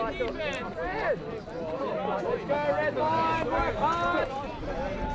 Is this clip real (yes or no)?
yes